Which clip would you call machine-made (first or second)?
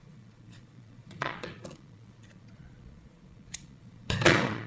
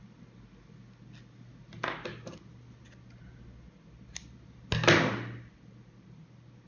first